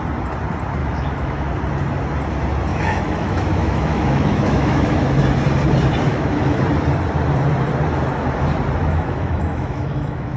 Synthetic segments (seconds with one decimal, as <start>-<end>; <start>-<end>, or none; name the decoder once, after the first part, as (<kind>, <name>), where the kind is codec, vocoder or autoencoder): 0.8-1.5 (autoencoder, DAC-VAE); 2.7-5.2; 6.1-6.6; 8.8-10.4

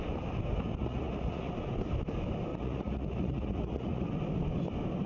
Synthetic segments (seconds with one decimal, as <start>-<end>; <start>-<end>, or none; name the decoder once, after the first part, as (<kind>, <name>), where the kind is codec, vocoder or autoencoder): 0.8-1.5 (vocoder, Vocos); 2.5-4.1

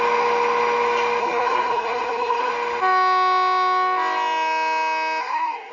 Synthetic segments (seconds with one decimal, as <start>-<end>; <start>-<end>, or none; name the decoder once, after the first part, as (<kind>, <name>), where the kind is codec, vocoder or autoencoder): 1.2-2.5 (codec, SNAC); 5.2-5.7

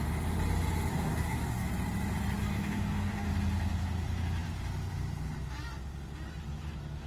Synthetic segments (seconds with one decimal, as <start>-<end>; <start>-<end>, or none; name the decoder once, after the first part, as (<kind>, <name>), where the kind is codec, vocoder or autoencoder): 0.9-1.7 (codec, DAC); 2.4-3.3